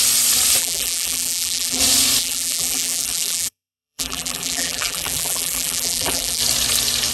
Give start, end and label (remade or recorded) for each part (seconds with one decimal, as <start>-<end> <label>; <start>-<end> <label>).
0.0-0.6 recorded; 0.6-1.8 remade; 1.8-2.2 recorded; 2.2-6.4 remade; 6.4-7.1 recorded

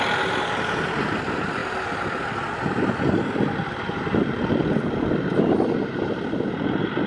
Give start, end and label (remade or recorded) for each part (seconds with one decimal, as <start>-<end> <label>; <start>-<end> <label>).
0.0-7.1 recorded

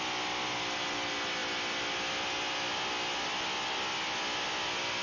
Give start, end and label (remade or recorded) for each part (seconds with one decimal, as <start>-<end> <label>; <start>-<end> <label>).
0.0-5.0 recorded

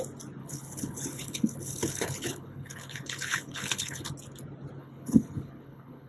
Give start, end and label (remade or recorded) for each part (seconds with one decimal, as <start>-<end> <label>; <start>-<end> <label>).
0.0-0.4 recorded; 0.4-4.1 remade; 4.1-4.8 recorded; 4.8-6.1 remade

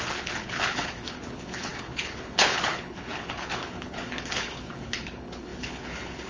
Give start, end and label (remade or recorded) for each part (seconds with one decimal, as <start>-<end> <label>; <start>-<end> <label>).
0.0-6.3 remade